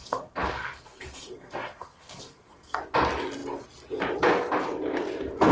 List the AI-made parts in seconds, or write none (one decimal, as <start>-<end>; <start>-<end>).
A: 0.0-2.8